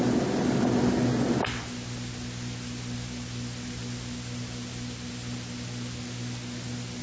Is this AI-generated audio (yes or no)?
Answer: no